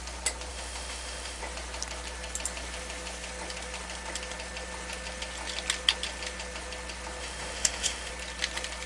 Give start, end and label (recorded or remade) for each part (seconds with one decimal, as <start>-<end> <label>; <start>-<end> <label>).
0.0-0.5 recorded; 0.5-1.4 remade; 1.4-7.2 recorded; 7.2-8.1 remade; 8.1-8.9 recorded